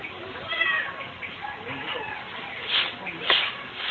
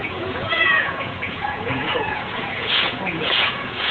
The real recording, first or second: first